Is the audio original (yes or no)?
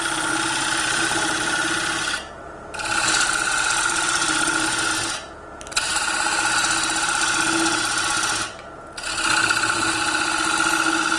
yes